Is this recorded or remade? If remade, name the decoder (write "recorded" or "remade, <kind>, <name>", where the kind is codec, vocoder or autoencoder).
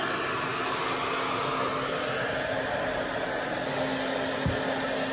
recorded